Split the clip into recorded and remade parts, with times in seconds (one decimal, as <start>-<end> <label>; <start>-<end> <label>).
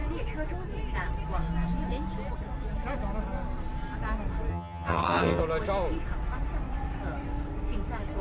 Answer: 0.0-4.5 recorded; 4.5-5.4 remade; 5.4-8.2 recorded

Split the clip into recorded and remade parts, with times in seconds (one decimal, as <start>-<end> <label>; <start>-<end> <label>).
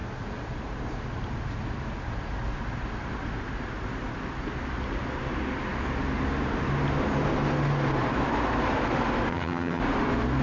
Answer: 0.0-9.3 recorded; 9.3-9.8 remade; 9.8-10.4 recorded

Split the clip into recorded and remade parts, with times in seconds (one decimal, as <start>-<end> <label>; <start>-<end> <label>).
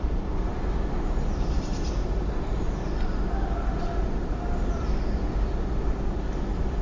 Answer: 0.0-6.8 recorded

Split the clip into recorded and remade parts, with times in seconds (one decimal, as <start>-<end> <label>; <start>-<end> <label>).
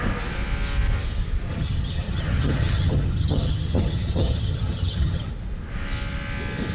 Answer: 0.0-1.5 recorded; 1.5-5.3 remade; 5.3-6.7 recorded